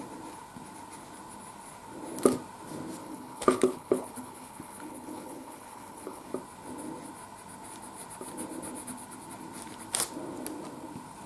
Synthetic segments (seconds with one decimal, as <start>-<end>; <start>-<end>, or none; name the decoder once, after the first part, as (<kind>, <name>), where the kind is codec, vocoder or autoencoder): 3.0-6.3 (codec, HILCodec)